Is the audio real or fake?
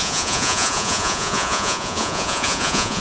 fake